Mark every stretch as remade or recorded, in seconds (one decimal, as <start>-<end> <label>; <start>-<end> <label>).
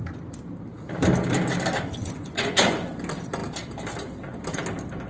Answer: 0.0-2.0 recorded; 2.0-2.9 remade; 2.9-5.1 recorded